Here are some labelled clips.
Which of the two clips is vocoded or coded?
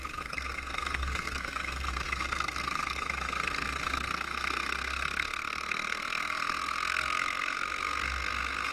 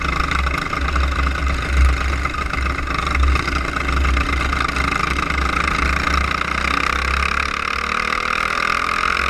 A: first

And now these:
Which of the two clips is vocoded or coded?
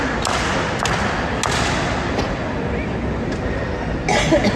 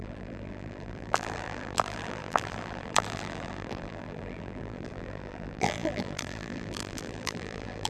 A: second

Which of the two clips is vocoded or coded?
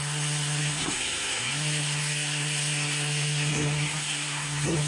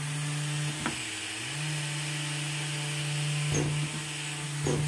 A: first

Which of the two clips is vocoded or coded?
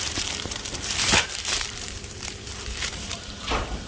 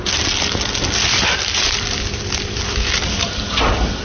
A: first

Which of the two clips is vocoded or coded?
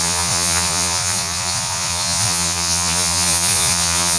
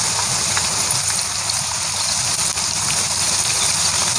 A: first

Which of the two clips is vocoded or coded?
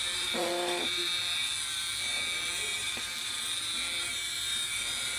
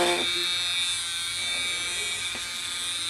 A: first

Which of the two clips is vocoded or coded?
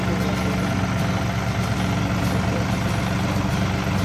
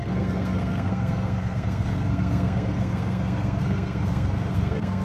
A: second